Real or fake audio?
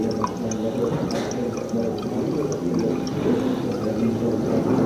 real